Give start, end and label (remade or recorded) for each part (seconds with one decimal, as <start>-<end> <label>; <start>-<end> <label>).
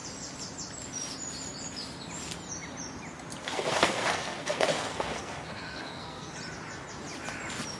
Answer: 0.0-3.4 recorded; 3.4-6.3 remade; 6.3-7.8 recorded